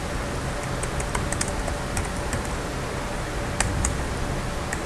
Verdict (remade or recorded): recorded